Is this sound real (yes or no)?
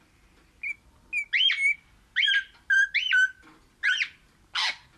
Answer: yes